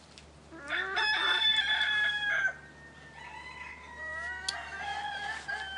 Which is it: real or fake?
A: real